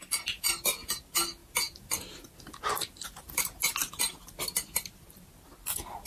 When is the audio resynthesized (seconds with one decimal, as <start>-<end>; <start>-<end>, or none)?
none